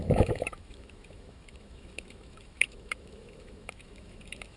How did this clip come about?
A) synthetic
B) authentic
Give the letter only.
A